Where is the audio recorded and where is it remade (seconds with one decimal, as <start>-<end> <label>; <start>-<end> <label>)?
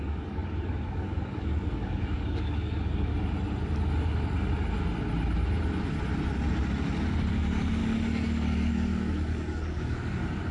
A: 0.0-3.1 remade; 3.1-7.3 recorded; 7.3-10.5 remade